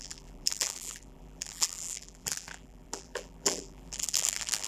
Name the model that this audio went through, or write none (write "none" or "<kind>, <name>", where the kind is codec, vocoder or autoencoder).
vocoder, BigVGAN v2